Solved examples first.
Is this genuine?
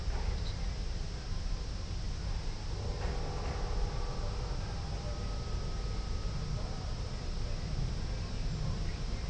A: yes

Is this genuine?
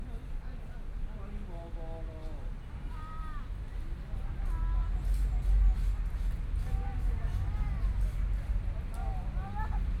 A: yes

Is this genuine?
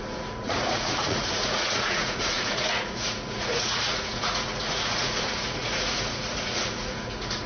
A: no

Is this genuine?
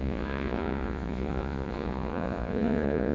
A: no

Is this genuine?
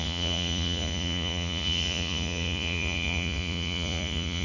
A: no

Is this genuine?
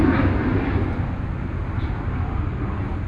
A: yes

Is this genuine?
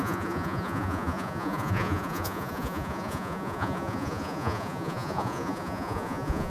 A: no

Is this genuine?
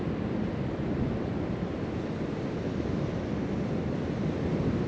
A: yes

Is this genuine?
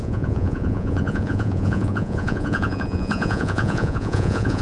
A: no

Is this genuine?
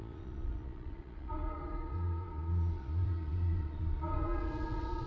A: no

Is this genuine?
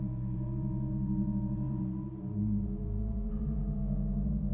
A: no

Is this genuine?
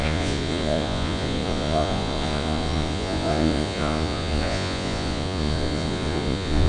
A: no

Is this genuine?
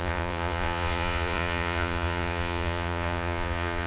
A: no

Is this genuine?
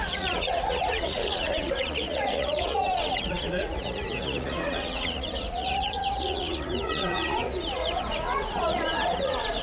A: no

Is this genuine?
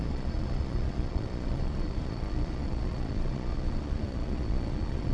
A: no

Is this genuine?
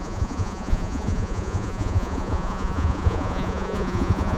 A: no